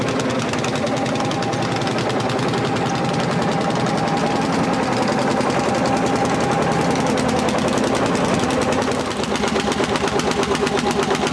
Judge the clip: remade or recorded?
recorded